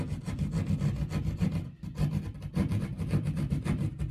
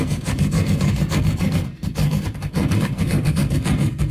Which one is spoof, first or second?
second